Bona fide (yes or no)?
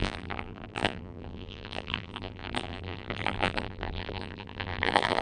no